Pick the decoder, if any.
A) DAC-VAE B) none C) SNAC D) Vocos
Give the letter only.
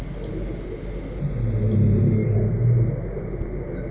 B